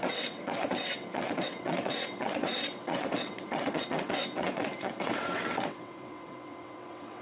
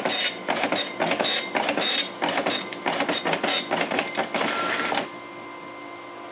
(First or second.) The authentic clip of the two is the second